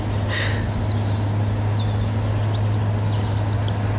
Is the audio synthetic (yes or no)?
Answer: no